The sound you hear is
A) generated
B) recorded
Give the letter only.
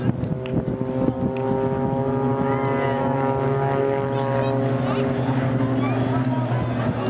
B